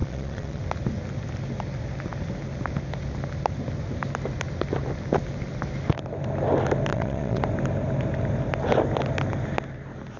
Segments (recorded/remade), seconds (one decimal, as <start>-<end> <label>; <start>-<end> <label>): 0.0-0.6 remade; 0.6-6.9 recorded; 6.9-7.4 remade; 7.4-10.2 recorded